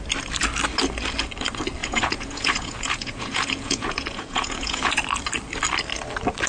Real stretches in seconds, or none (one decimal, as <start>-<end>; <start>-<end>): 0.0-1.8; 4.9-6.5